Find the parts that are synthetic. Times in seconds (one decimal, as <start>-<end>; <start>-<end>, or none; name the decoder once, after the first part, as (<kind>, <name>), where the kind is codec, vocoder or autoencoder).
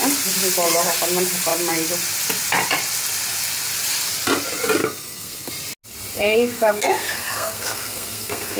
4.8-5.5 (codec, SNAC); 6.1-8.6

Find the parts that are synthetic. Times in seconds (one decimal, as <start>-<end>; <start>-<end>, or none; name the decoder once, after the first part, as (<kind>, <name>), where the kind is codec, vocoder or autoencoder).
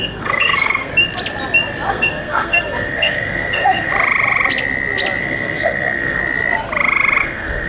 0.0-0.9 (codec, SNAC); 1.9-3.9; 5.2-6.2; 7.2-7.7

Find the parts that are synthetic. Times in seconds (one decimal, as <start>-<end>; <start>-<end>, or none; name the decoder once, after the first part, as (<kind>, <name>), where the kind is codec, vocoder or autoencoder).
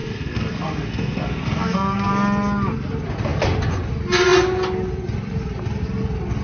0.0-2.1 (codec, SNAC)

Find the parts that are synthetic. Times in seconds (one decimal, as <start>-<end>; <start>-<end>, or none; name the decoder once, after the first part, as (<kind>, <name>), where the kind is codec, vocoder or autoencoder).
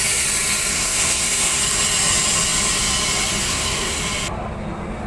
0.7-1.6 (codec, SNAC); 3.4-4.0